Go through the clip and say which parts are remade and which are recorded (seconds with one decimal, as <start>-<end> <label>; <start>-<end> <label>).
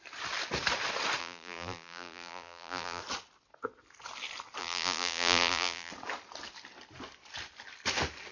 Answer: 0.0-1.2 recorded; 1.2-3.0 remade; 3.0-4.6 recorded; 4.6-5.9 remade; 5.9-8.3 recorded